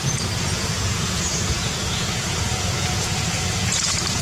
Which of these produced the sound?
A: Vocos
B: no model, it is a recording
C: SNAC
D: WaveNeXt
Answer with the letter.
A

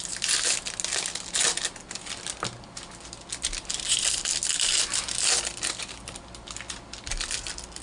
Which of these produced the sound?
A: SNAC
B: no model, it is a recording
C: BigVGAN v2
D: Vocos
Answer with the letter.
B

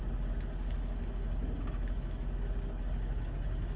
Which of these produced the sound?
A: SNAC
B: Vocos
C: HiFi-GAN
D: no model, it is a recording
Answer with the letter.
D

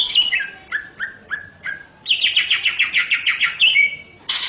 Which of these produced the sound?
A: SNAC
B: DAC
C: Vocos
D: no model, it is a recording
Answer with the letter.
D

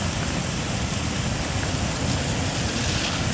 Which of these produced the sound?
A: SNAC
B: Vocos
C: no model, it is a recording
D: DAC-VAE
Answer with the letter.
C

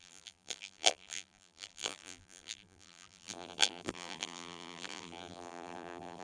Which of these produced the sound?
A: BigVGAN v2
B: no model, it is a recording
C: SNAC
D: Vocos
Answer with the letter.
A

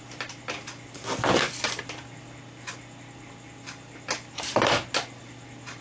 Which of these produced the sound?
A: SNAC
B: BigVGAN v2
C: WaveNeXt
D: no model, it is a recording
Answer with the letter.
D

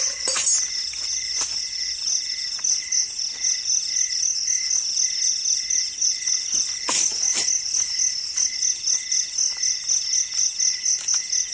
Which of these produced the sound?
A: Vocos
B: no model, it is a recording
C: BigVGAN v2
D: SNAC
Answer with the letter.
B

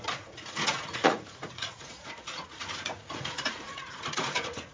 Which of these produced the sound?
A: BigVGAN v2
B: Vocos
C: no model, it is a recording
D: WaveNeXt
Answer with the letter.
B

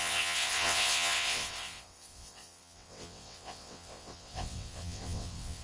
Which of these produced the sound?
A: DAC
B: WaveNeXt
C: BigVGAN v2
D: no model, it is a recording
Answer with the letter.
B